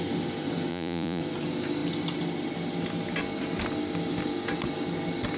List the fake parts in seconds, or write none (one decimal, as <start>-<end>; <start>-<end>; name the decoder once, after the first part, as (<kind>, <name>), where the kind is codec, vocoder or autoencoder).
0.7-1.2 (vocoder, Vocos)